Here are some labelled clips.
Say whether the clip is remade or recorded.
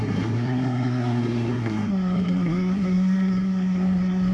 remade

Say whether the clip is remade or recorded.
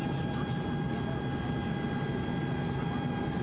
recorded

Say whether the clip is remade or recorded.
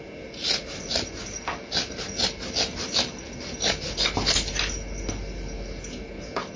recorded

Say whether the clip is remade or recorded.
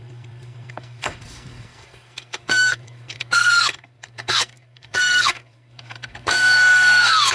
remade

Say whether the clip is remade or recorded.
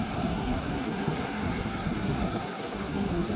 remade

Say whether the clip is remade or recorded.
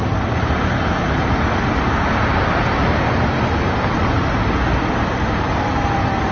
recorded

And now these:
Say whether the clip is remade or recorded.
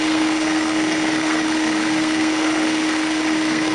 remade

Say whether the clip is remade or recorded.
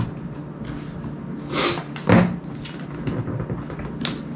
recorded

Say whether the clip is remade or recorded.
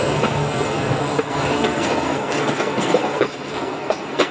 remade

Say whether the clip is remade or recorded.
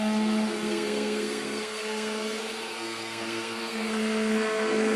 remade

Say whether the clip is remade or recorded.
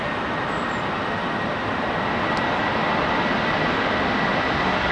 recorded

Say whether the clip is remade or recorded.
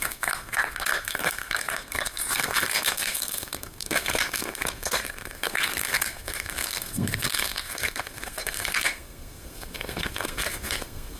remade